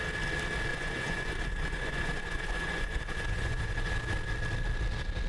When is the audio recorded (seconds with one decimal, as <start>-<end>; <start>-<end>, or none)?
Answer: 0.0-0.7; 3.9-5.3